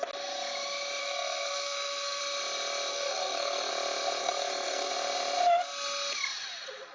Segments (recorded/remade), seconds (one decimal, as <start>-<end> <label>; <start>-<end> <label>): 0.0-1.0 recorded; 1.0-2.2 remade; 2.2-2.9 recorded; 2.9-3.7 remade; 3.7-4.2 recorded; 4.2-4.9 remade; 4.9-6.9 recorded